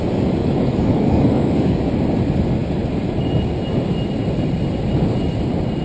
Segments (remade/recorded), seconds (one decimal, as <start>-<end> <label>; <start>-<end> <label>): 0.0-0.4 recorded; 0.4-1.8 remade; 1.8-5.8 recorded